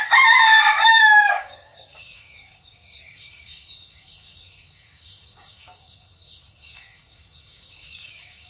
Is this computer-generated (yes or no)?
yes